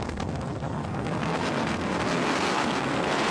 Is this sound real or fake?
fake